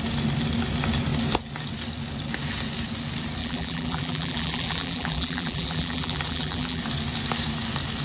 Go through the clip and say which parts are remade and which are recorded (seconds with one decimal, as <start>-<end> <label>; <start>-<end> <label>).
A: 0.0-3.4 recorded; 3.4-6.8 remade; 6.8-8.0 recorded

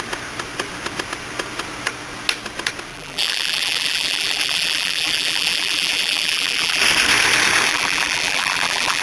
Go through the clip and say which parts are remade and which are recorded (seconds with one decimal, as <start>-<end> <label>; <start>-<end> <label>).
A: 0.0-2.9 recorded; 2.9-6.8 remade; 6.8-7.7 recorded; 7.7-9.0 remade

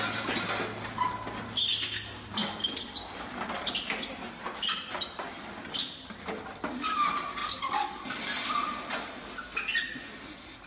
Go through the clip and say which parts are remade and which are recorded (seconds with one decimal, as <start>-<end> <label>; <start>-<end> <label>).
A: 0.0-2.4 recorded; 2.4-3.7 remade; 3.7-10.7 recorded

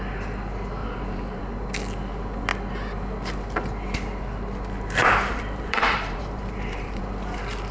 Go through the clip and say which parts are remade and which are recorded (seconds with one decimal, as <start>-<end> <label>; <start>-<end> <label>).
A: 0.0-0.8 recorded; 0.8-1.4 remade; 1.4-5.0 recorded; 5.0-7.0 remade; 7.0-7.7 recorded

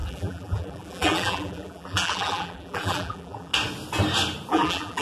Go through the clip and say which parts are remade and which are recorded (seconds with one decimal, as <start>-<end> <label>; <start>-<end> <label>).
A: 0.0-3.5 remade; 3.5-4.5 recorded; 4.5-5.0 remade

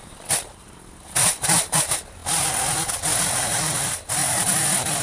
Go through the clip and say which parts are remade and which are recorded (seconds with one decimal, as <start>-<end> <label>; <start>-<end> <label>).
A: 0.0-2.2 remade; 2.2-3.3 recorded; 3.3-4.2 remade; 4.2-5.0 recorded

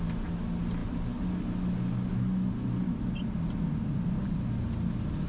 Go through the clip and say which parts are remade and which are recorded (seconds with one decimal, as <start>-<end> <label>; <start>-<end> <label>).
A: 0.0-5.3 recorded

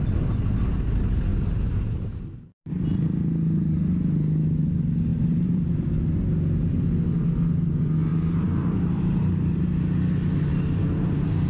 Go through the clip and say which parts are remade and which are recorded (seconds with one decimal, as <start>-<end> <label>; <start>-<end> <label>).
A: 0.0-1.3 recorded; 1.3-2.7 remade; 2.7-5.1 recorded; 5.1-5.9 remade; 5.9-8.1 recorded; 8.1-9.6 remade; 9.6-10.5 recorded; 10.5-11.5 remade